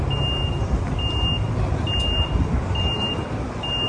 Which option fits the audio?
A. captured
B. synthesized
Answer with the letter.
A